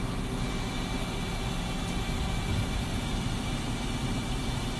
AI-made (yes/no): no